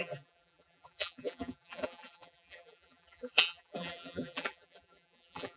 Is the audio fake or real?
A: fake